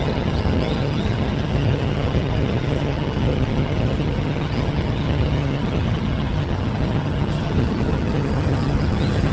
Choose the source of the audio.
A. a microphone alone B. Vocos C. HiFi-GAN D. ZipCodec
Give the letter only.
C